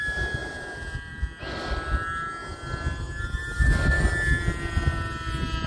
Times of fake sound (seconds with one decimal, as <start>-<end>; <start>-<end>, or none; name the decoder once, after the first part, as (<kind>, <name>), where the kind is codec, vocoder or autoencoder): none